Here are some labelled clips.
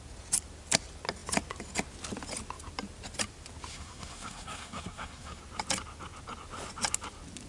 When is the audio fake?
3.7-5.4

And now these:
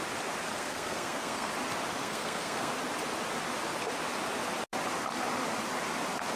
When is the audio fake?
0.5-1.5; 2.0-2.7

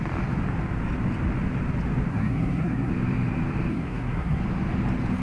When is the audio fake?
2.1-2.9; 3.7-4.4